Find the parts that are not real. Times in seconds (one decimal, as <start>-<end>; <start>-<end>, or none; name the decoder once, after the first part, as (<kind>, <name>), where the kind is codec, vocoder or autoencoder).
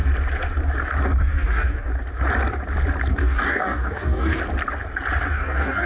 1.2-1.9 (codec, DAC); 3.1-4.4; 5.3-5.9